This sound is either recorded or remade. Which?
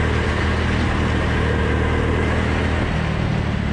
recorded